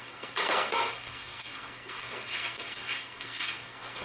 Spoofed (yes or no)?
yes